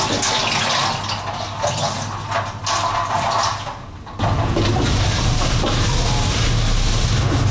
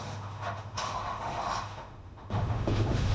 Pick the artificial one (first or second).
second